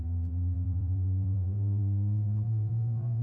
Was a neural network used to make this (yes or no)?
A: yes